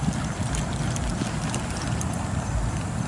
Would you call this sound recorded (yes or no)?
yes